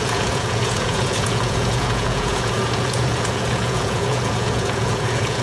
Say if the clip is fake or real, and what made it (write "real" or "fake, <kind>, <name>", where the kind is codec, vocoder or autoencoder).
fake, vocoder, Vocos